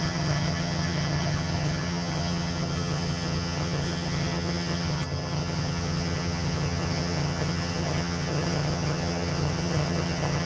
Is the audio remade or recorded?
remade